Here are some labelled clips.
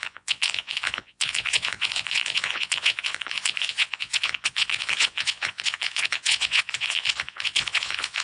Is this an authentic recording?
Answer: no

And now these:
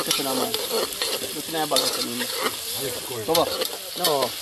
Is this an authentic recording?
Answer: yes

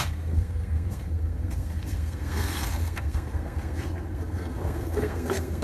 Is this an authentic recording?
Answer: no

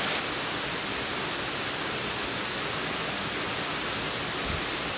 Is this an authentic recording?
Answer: yes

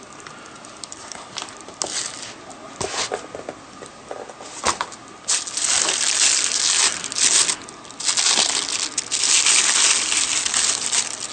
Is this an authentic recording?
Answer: yes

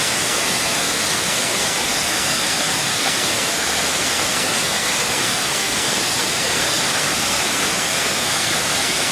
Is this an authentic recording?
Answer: no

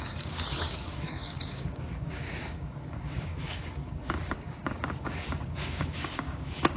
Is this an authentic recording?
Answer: no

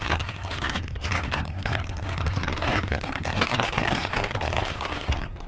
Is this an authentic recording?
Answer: no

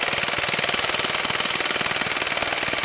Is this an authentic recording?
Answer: yes